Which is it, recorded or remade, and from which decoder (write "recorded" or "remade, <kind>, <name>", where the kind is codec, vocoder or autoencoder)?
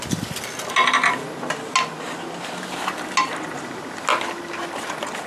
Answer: recorded